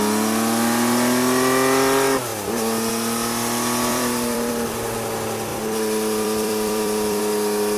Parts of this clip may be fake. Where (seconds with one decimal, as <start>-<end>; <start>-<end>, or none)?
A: 3.9-4.5; 5.5-7.2